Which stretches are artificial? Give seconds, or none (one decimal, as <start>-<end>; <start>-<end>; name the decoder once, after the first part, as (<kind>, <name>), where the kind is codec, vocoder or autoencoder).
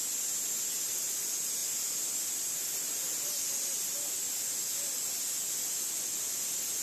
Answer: none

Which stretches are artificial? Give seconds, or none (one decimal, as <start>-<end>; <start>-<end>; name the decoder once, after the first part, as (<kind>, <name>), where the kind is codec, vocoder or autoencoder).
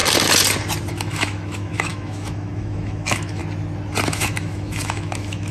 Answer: 0.9-3.4 (autoencoder, DAC-VAE); 4.1-5.5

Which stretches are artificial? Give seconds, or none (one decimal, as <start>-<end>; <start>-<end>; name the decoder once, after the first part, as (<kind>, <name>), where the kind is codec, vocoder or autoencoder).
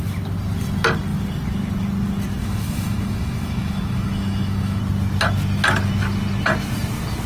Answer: 2.4-4.8 (autoencoder, DAC-VAE)